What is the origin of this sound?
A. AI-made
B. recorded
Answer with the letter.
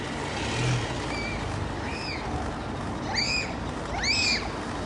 B